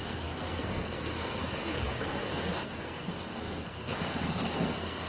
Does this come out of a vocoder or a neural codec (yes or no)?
yes